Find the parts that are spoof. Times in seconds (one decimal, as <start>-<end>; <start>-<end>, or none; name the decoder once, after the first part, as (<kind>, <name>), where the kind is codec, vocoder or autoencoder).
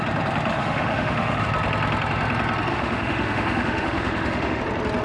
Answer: 0.5-1.4 (autoencoder, DAC-VAE); 2.7-4.6